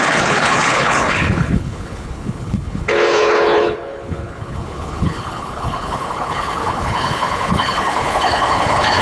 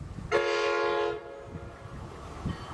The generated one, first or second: first